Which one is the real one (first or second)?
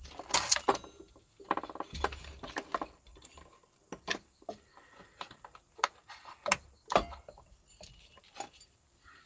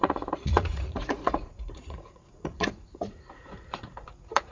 first